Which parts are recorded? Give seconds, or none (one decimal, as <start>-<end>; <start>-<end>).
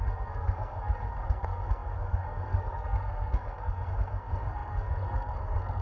none